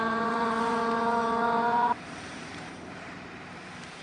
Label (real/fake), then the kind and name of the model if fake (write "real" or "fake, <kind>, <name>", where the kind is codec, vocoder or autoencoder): fake, vocoder, BigVGAN v2